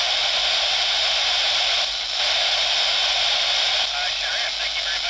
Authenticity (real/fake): real